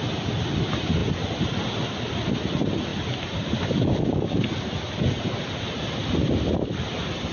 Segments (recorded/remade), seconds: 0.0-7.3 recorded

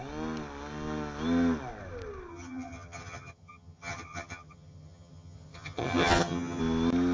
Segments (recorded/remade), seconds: 0.0-2.3 recorded; 2.3-6.6 remade; 6.6-7.1 recorded